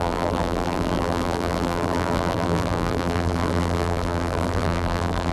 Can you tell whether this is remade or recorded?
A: remade